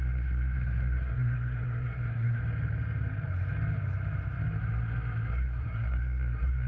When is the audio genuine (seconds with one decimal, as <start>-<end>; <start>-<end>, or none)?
2.4-5.3